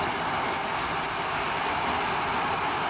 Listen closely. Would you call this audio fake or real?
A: real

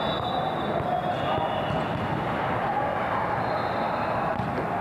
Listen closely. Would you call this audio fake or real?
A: real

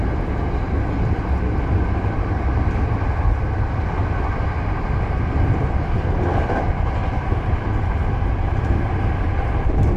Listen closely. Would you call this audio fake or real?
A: real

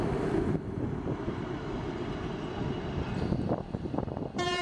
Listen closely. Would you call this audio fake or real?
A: fake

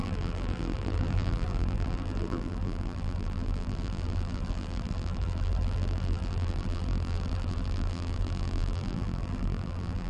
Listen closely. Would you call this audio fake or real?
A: fake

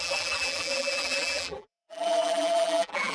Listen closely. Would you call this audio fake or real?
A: fake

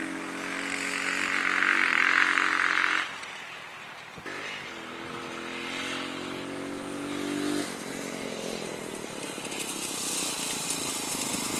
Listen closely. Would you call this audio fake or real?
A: real